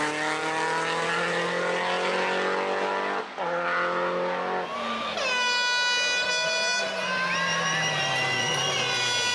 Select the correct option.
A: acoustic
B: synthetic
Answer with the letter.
A